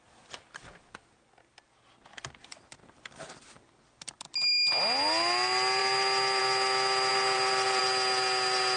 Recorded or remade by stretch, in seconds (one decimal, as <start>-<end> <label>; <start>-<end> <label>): 0.0-7.1 recorded; 7.1-7.8 remade; 7.8-8.8 recorded